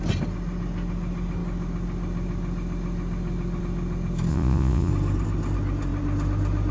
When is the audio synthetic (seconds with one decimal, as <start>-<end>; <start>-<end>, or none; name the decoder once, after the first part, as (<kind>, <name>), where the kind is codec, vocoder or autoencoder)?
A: 4.3-4.9 (vocoder, Vocos)